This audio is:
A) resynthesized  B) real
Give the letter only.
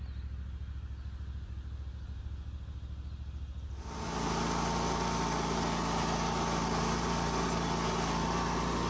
B